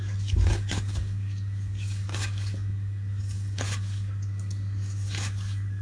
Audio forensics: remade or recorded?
remade